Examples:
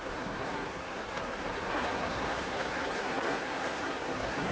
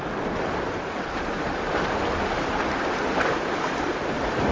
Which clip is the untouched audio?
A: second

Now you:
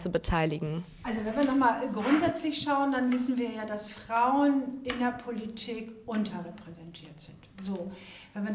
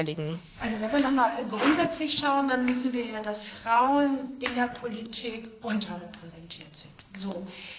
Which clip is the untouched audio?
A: first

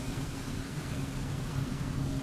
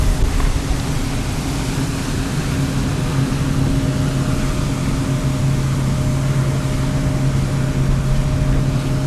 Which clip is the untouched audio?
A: second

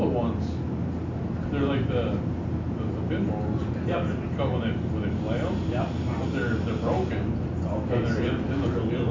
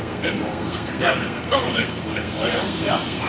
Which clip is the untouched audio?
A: first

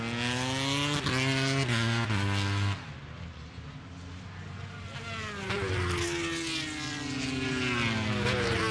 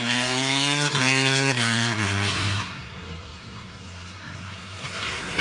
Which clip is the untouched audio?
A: first